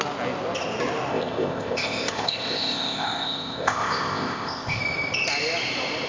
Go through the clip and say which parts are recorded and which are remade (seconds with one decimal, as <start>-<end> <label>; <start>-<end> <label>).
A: 0.0-1.1 recorded; 1.1-4.8 remade; 4.8-6.1 recorded